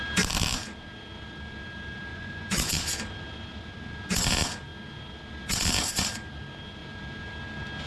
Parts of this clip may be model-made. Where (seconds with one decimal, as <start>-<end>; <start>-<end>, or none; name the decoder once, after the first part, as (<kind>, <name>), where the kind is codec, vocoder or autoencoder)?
2.1-2.7 (vocoder, Vocos)